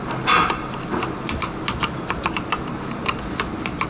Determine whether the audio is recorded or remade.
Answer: recorded